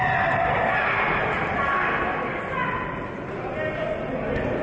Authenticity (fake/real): real